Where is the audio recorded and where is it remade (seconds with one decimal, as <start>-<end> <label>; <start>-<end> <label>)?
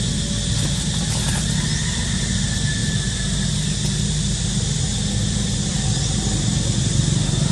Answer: 0.0-2.8 recorded; 2.8-7.5 remade